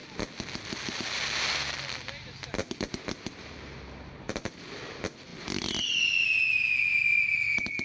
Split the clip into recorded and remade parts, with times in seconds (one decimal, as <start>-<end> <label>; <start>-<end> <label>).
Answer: 0.0-7.8 recorded